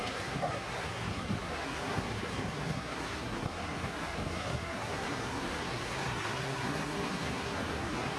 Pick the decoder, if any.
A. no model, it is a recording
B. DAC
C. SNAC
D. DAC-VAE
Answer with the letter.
C